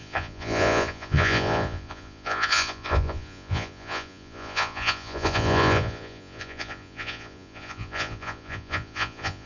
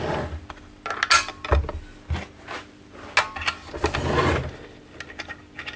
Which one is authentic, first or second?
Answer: second